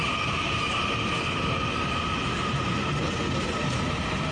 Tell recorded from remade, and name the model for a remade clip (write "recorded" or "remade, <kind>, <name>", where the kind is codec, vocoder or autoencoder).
recorded